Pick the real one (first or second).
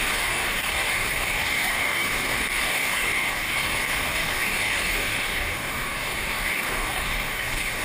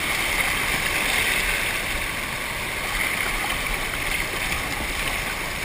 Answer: second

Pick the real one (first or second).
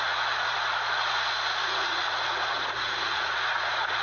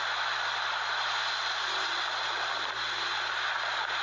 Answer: second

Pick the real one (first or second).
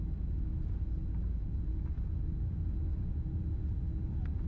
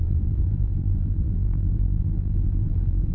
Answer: first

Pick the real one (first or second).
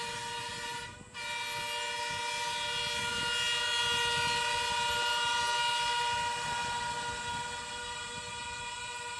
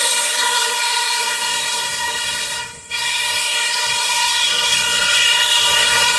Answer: first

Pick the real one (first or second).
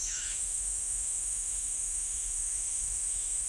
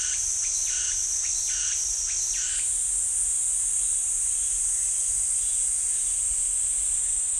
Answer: second